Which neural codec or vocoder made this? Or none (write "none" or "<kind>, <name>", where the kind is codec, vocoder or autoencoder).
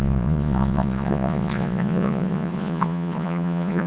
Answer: vocoder, Vocos